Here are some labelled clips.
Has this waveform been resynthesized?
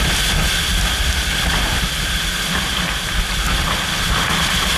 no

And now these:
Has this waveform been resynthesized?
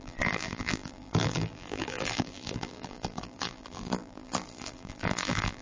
yes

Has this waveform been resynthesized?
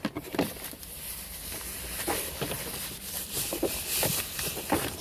yes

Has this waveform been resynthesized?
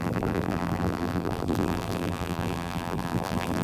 yes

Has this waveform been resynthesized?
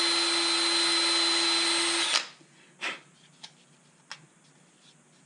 no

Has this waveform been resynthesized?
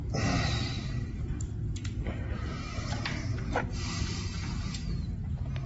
no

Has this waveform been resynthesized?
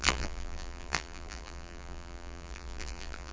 yes